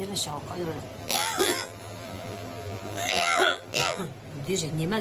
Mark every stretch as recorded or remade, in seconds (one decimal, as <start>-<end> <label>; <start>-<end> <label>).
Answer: 0.0-1.0 recorded; 1.0-4.0 remade; 4.0-5.0 recorded